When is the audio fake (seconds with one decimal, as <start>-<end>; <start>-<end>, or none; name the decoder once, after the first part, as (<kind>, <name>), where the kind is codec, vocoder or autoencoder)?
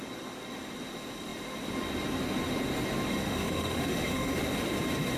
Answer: 3.1-4.3 (autoencoder, DAC-VAE)